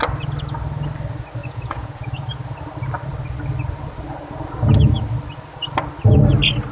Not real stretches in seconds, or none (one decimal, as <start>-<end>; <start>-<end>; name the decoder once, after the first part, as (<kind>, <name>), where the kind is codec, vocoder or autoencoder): 1.4-2.2 (vocoder, Vocos)